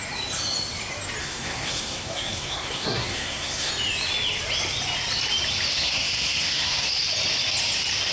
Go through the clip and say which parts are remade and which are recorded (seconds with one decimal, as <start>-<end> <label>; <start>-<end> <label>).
0.0-1.2 recorded; 1.2-3.7 remade; 3.7-5.7 recorded; 5.7-6.9 remade; 6.9-8.1 recorded